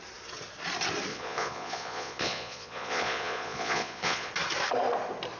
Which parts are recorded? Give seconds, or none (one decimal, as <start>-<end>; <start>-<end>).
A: 0.0-1.1; 4.3-5.4

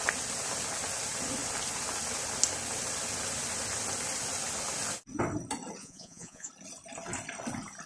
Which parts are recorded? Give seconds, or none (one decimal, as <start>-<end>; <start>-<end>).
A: 0.0-5.8; 6.5-7.9